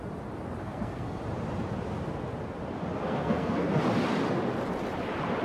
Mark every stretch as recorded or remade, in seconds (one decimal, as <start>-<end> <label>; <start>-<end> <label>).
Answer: 0.0-0.6 recorded; 0.6-1.2 remade; 1.2-2.9 recorded; 2.9-3.8 remade; 3.8-5.4 recorded